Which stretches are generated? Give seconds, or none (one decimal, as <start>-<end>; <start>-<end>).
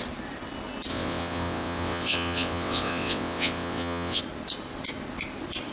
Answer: 0.9-4.2